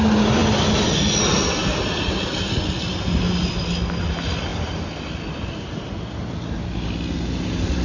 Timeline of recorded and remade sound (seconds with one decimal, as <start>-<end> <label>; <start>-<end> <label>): 0.0-7.8 recorded